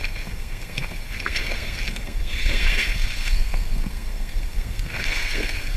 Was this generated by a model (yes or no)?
yes